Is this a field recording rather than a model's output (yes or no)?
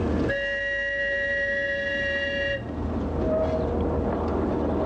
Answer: yes